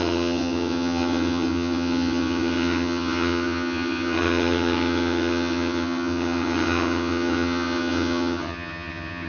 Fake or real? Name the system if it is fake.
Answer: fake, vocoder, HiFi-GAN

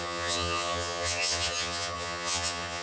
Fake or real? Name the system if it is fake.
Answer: fake, vocoder, HiFi-GAN